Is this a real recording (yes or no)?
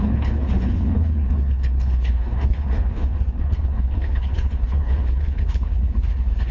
no